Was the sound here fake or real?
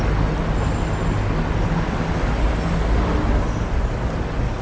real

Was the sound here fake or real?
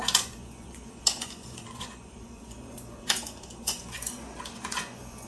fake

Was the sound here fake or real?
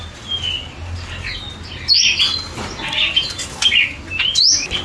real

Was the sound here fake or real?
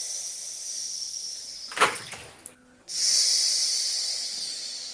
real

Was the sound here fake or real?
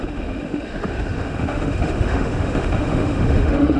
fake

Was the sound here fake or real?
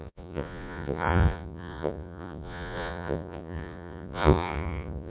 fake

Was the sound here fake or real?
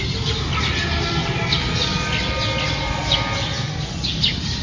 real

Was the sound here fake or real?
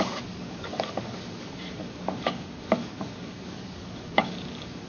fake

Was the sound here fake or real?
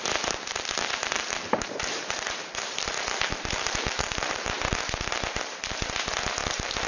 fake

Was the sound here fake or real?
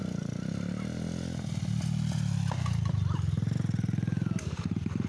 real